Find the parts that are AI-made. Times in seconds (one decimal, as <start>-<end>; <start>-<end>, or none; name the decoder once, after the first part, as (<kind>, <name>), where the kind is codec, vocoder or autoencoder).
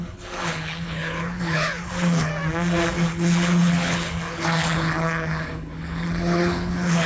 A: 0.0-2.3 (codec, HILCodec); 2.9-7.1